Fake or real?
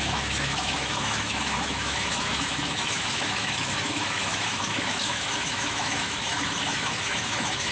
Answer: fake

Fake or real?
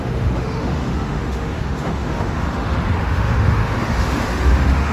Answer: fake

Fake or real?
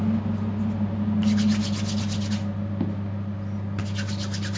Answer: real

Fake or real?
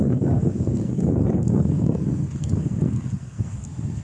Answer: fake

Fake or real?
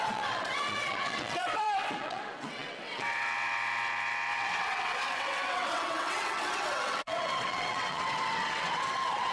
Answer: fake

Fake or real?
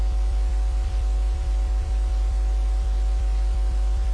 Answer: fake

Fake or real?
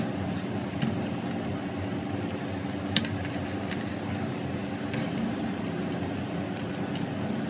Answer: real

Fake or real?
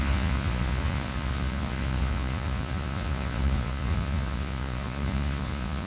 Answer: fake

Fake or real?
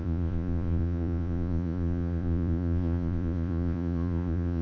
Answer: fake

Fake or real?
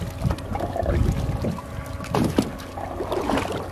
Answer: real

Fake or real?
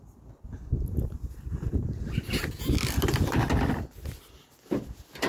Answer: real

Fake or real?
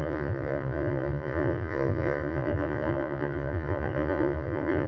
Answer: fake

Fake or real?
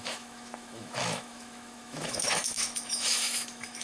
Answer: fake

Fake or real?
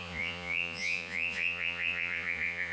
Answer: fake